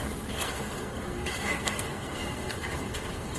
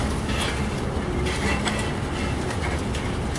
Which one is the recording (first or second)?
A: second